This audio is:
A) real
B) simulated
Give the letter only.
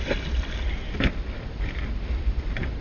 A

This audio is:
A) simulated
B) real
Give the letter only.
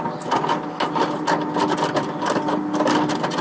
B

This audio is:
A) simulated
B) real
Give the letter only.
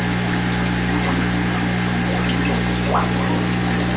B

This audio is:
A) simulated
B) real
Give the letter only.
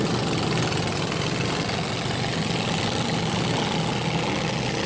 B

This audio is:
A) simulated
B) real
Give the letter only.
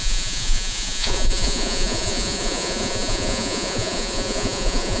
A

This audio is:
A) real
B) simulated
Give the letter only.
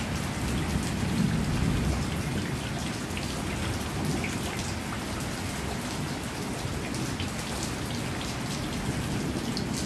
A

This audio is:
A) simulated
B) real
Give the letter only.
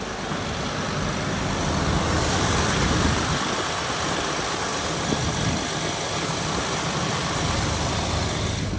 B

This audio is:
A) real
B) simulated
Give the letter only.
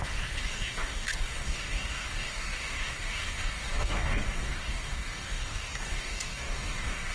B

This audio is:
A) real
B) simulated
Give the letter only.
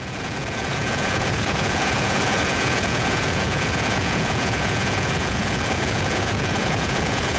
B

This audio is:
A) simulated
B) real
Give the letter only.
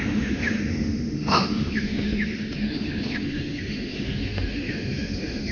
A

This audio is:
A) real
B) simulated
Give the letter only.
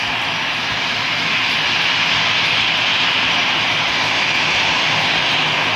A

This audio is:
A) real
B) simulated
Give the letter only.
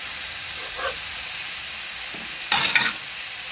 A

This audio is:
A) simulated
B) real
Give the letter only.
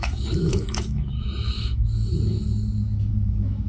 A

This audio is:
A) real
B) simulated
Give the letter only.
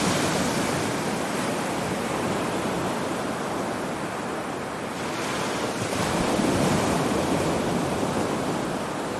A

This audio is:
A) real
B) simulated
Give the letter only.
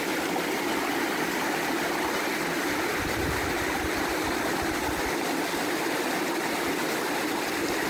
A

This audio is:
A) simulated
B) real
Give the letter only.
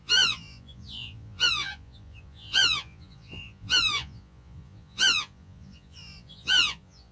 A